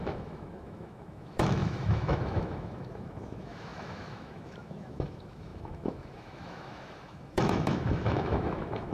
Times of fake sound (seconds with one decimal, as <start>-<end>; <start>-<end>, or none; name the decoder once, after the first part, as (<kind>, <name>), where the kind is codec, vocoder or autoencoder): 0.0-8.9 (autoencoder, DAC-VAE)